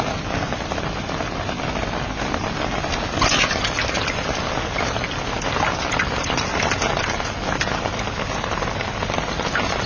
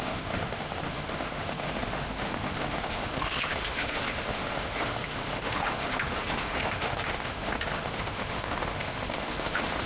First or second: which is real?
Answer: first